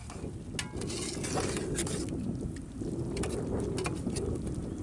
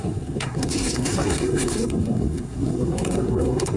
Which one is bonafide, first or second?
first